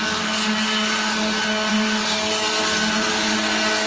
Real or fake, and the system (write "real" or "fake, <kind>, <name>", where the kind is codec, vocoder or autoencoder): real